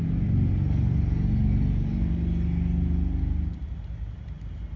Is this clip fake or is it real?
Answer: real